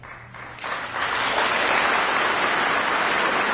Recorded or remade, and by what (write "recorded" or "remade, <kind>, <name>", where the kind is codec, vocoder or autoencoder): recorded